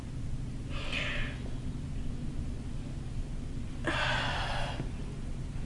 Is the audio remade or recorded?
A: recorded